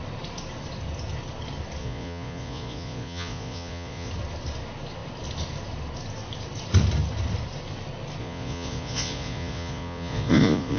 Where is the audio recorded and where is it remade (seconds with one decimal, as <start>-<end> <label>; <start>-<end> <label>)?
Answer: 0.0-1.8 recorded; 1.8-4.1 remade; 4.1-8.2 recorded; 8.2-10.8 remade